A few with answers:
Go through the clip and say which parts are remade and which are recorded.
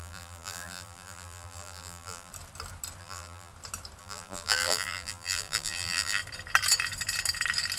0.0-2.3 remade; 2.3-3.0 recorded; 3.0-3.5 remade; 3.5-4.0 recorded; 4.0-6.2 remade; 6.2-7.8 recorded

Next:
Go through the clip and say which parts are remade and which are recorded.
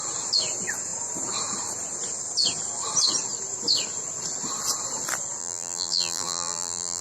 0.0-5.4 recorded; 5.4-7.0 remade